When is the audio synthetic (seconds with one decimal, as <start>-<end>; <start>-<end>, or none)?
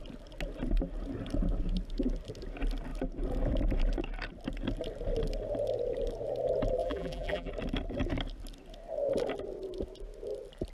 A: 6.8-7.5